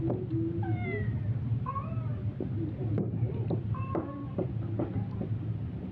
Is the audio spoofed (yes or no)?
no